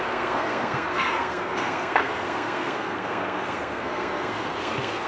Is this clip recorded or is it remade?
remade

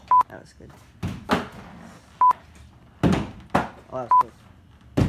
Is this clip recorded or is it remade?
recorded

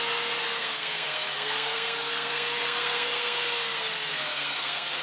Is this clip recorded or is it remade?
remade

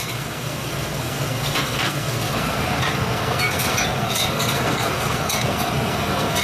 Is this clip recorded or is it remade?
remade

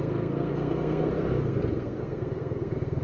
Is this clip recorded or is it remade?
remade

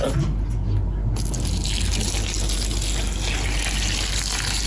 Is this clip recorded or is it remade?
recorded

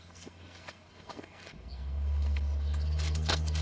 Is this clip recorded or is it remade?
remade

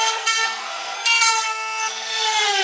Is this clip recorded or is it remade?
remade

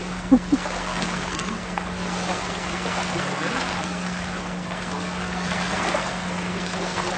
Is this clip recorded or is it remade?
remade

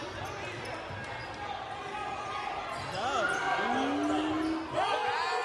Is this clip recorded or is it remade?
recorded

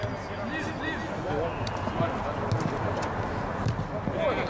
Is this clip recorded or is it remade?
recorded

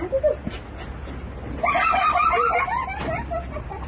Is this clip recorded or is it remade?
recorded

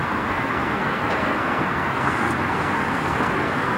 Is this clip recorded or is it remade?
remade